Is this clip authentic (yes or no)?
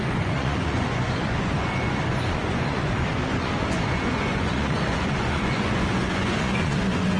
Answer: no